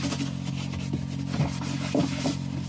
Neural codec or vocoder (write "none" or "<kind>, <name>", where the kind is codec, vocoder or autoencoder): none